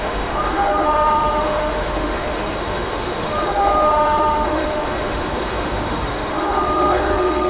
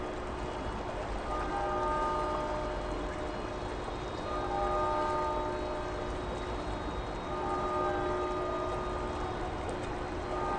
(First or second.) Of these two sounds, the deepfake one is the first